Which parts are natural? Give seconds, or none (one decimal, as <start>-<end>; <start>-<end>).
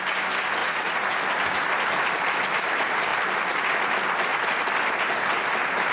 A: 0.0-0.6; 1.2-5.9